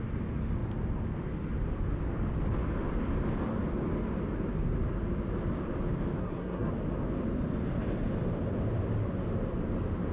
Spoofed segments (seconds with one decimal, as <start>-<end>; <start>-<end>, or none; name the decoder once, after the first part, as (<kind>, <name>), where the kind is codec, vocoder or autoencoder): 6.2-6.7 (codec, SNAC)